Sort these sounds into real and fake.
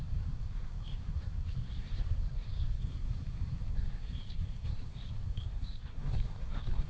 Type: fake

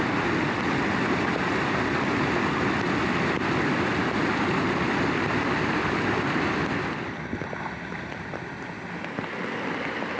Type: real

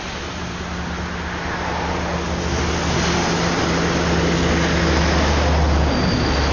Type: real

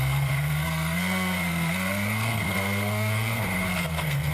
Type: fake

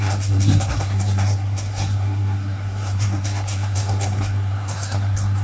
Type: fake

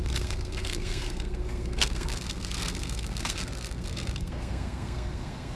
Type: fake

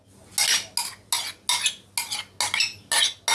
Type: real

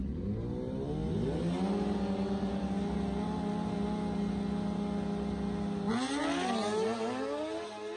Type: real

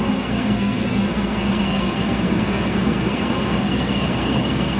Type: fake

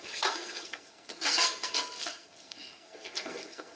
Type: fake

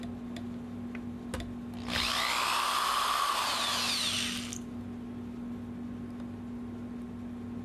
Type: real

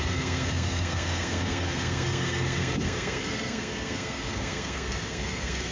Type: fake